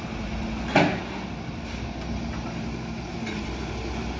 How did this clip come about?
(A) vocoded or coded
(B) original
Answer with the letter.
B